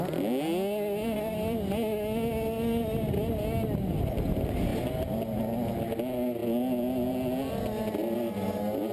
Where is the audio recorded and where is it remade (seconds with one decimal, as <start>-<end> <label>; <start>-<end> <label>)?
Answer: 0.0-8.9 recorded